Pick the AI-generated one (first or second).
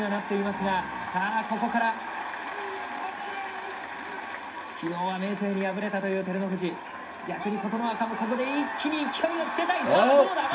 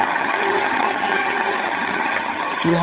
second